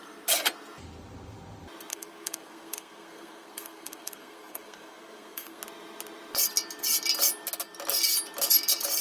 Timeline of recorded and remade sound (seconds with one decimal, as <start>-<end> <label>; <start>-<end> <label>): 0.0-1.9 recorded; 1.9-5.6 remade; 5.6-9.0 recorded